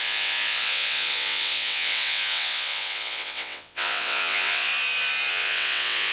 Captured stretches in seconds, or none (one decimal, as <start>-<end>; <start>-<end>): 4.7-5.3